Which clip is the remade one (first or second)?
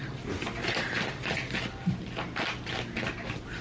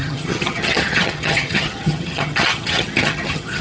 second